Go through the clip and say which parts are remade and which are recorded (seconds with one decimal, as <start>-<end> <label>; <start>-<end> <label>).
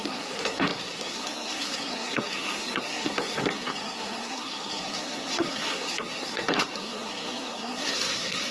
0.0-8.5 remade